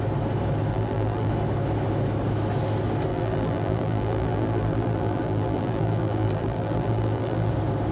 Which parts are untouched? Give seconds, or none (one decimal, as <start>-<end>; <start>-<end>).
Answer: 0.0-0.7; 1.3-3.1; 7.5-7.9